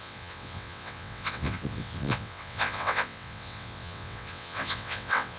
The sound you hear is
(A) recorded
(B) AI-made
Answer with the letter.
B